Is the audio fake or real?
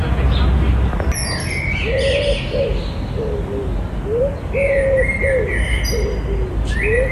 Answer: real